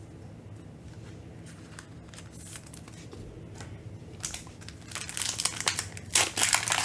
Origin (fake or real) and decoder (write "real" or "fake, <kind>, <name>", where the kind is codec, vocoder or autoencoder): real